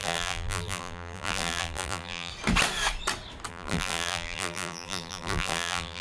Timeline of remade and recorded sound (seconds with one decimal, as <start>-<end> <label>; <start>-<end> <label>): 0.0-2.3 remade; 2.3-3.5 recorded; 3.5-6.0 remade